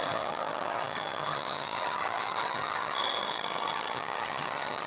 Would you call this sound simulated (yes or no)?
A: yes